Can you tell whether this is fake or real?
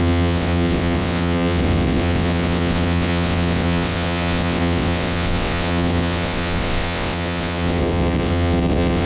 fake